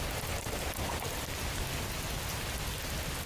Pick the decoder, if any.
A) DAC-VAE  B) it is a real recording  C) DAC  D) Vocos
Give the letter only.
B